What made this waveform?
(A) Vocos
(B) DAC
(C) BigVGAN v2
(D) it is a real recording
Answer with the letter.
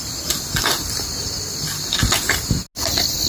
D